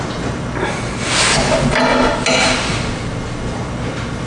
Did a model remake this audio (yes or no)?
no